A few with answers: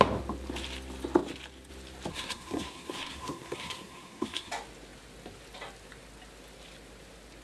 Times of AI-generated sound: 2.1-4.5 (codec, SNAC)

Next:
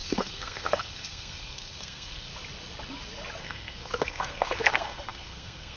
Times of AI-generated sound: 0.0-2.3 (codec, SNAC); 3.4-5.8

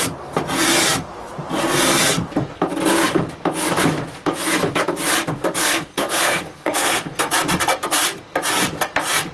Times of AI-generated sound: 5.6-7.3 (codec, SNAC)

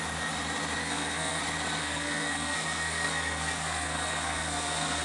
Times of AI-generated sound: 0.8-1.4 (codec, SNAC); 1.8-5.0

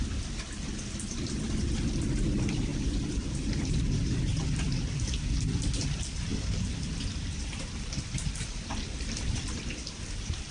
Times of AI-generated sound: none